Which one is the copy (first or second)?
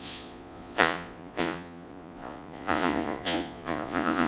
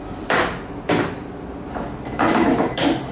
first